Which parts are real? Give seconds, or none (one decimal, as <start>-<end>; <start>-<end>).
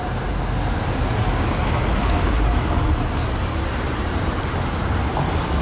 0.0-3.4; 4.4-5.6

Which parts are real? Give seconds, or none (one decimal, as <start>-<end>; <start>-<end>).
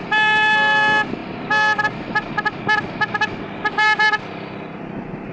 0.0-5.3